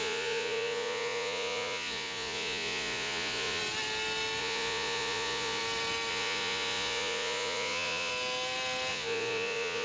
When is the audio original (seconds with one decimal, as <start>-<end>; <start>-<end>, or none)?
3.6-4.4; 5.6-6.1; 8.1-8.9